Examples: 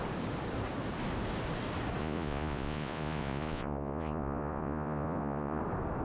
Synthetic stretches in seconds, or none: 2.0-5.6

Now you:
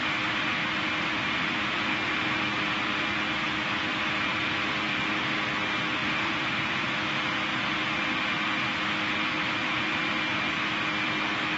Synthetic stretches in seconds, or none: 4.3-5.0; 6.0-6.8

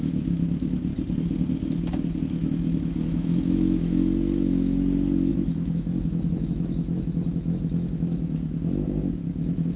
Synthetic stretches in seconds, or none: 0.0-0.9; 2.2-9.8

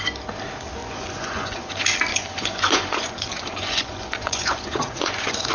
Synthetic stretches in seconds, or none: 0.8-1.7; 2.1-5.5

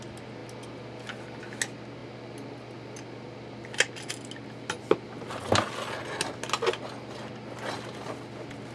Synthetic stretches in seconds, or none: none

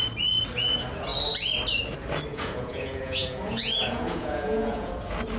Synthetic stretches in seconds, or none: 2.3-5.0